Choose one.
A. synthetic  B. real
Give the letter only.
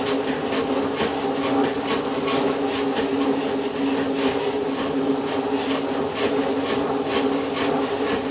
B